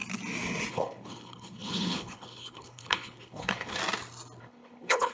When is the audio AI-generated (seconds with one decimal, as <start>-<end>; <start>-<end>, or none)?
0.7-3.8; 4.4-5.1